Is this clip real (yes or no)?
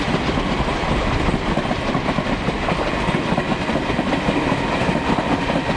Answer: yes